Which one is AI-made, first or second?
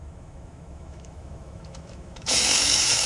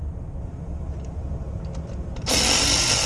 first